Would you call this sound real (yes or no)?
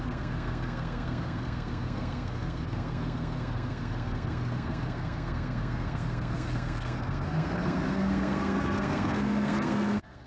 no